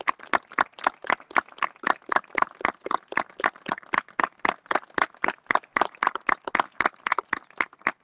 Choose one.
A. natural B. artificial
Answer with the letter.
A